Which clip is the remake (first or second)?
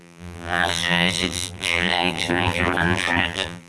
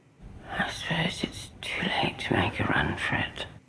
first